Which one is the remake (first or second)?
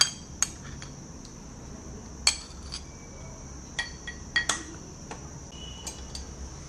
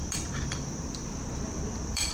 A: second